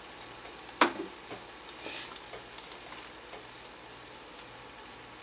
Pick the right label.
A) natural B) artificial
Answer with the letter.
A